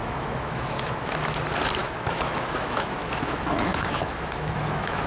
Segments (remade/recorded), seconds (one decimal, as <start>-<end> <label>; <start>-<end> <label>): 0.0-1.1 remade; 1.1-1.8 recorded; 1.8-5.1 remade